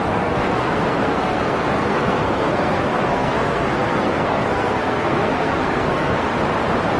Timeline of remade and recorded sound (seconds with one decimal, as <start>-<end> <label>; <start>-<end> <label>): 0.0-6.3 remade; 6.3-7.0 recorded